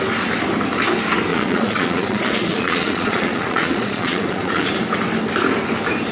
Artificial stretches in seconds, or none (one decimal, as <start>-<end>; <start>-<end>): 1.3-4.7

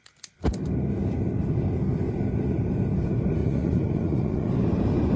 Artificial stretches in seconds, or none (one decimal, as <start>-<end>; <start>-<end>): 3.4-4.5

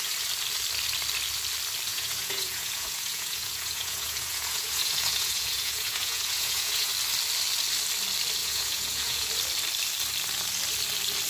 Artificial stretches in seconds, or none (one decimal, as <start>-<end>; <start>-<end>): 1.9-6.9; 8.4-9.3

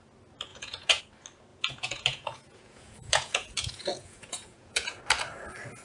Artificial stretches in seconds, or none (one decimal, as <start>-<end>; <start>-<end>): 0.5-1.0; 1.5-5.0